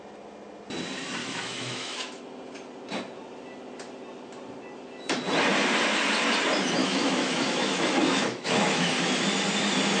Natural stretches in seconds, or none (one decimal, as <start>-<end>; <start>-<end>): 0.0-1.2; 2.2-6.8; 8.9-10.0